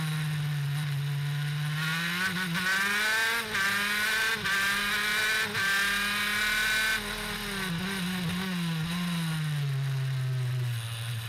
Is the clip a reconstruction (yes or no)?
no